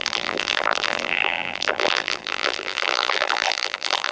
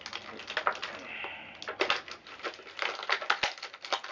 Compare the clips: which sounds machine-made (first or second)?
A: first